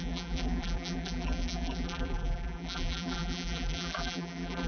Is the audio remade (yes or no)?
yes